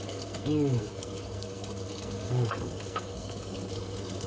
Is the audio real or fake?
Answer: fake